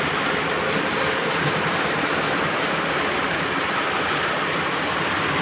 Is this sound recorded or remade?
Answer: recorded